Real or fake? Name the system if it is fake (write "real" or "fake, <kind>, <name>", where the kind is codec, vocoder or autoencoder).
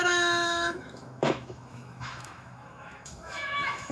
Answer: fake, autoencoder, DAC-VAE